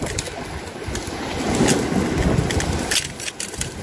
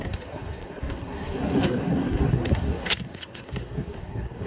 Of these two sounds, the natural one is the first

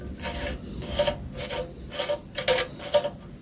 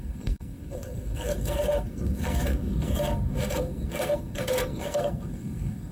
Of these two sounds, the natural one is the first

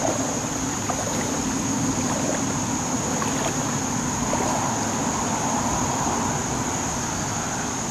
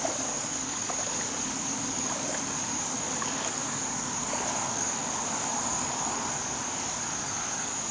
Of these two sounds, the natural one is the first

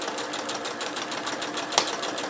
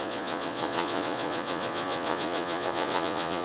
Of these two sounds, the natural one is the first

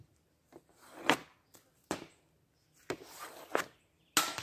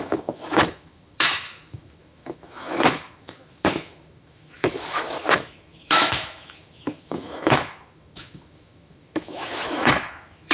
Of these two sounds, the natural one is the first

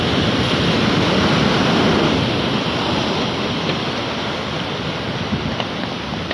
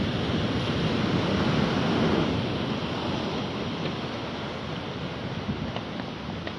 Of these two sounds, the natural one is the second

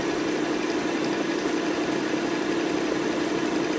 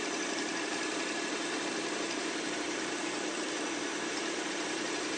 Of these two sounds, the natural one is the first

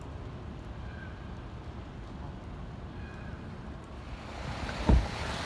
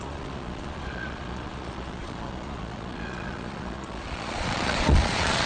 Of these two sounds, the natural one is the first